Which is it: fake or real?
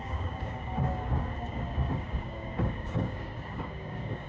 fake